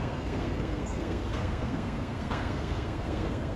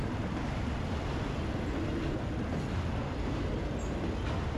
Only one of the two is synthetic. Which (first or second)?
first